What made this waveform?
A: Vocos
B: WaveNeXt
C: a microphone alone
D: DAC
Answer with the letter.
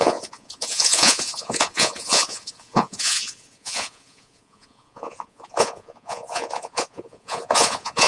A